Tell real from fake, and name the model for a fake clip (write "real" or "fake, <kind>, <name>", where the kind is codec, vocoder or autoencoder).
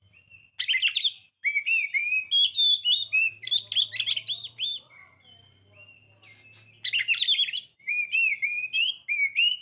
real